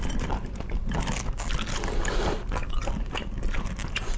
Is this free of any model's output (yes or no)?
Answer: yes